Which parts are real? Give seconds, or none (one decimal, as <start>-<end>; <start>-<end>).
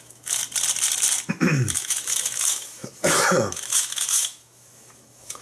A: 0.4-1.3